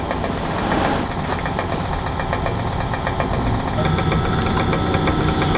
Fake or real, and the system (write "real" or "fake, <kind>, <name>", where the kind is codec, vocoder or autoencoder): real